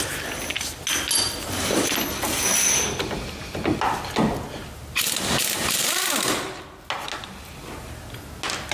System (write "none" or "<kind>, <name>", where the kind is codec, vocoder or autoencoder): none